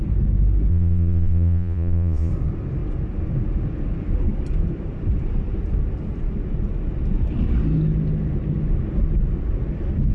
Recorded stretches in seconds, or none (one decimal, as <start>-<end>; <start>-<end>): 0.0-0.7; 2.3-10.1